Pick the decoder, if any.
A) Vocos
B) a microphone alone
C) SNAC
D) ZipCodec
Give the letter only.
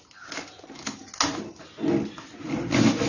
B